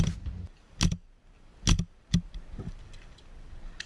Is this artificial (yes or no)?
no